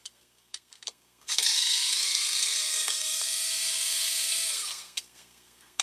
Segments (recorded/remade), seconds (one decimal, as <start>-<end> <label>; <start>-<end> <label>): 0.0-5.8 remade